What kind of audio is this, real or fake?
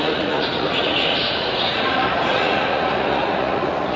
fake